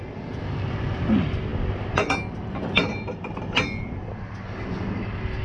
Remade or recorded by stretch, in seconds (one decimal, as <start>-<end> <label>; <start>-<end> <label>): 0.0-5.4 recorded